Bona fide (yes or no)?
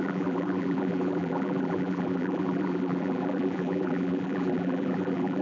no